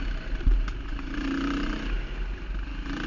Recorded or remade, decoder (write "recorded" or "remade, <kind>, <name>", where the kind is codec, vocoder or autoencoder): recorded